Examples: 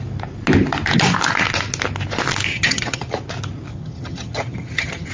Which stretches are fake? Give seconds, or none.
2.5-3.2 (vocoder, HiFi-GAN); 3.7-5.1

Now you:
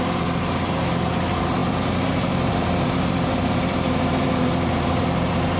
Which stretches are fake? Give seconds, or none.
0.0-5.6 (vocoder, BigVGAN v2)

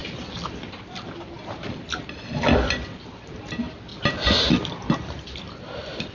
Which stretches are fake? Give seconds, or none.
none

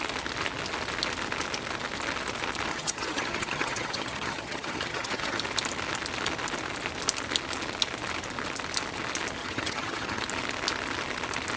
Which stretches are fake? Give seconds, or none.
2.7-5.4 (vocoder, HiFi-GAN); 9.4-10.2